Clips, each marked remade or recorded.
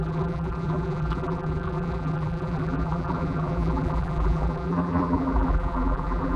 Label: remade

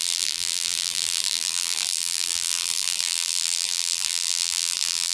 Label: remade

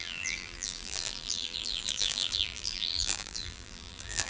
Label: remade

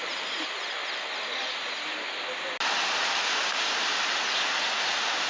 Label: recorded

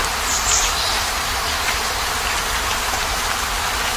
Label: remade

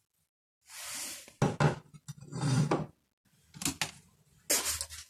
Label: recorded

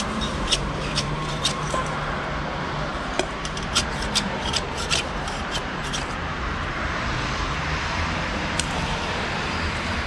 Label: remade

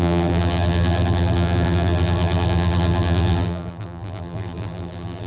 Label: remade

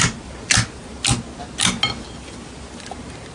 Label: recorded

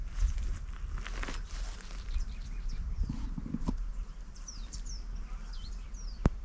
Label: remade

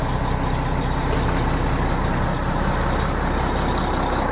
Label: recorded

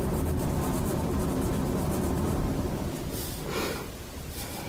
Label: recorded